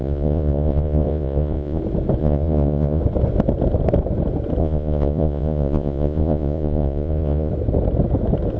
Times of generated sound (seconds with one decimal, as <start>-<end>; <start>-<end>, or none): 0.0-1.8; 2.2-3.0; 4.6-7.5